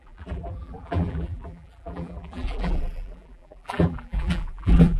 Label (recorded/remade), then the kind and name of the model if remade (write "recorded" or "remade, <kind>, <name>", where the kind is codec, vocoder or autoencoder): remade, vocoder, BigVGAN v2